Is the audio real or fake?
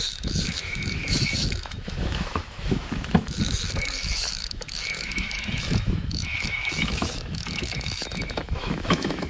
fake